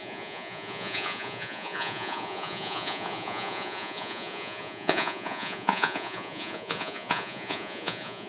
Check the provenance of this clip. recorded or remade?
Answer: remade